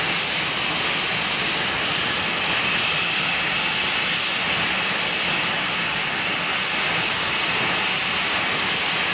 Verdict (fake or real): real